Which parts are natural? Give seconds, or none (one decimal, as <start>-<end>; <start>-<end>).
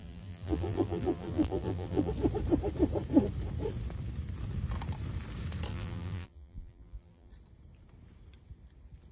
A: 2.1-5.7; 7.3-9.1